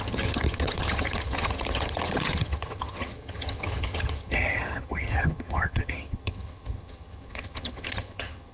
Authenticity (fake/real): fake